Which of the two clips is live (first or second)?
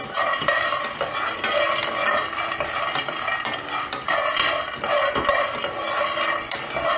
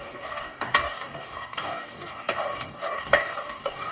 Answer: first